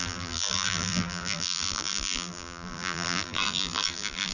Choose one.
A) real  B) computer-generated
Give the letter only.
B